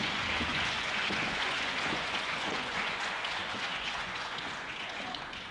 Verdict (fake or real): fake